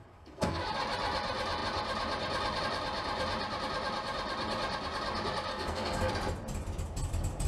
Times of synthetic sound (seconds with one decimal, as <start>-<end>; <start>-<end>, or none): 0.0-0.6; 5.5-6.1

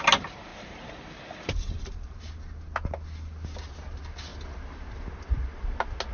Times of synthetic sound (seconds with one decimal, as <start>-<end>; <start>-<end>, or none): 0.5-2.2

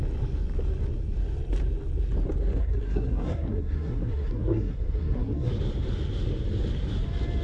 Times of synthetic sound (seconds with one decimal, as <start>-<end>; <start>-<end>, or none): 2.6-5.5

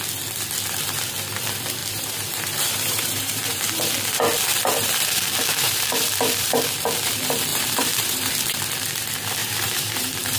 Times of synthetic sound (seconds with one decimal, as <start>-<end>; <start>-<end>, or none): 1.8-3.7; 7.5-8.3; 9.4-10.4